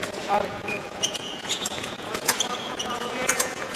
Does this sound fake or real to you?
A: fake